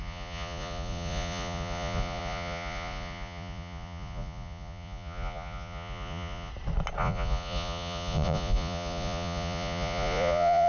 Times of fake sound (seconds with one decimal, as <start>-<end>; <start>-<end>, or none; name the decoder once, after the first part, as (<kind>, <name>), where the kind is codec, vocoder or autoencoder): 0.0-6.5 (vocoder, Vocos); 7.0-10.7